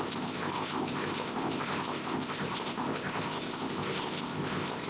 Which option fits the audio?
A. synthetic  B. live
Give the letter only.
A